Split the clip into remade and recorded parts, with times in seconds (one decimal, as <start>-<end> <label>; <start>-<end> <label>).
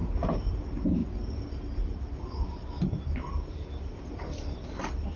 0.0-5.2 recorded